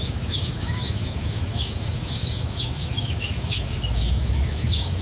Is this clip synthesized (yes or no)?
yes